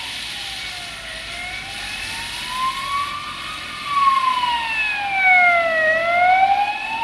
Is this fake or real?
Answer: real